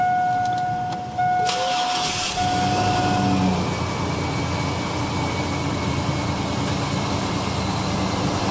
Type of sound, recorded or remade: recorded